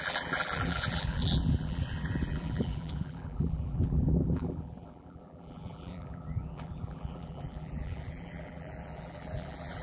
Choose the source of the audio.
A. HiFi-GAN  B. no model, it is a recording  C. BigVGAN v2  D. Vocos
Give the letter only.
C